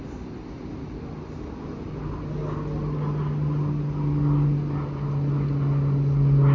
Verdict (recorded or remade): recorded